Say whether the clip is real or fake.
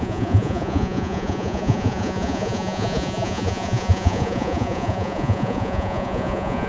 fake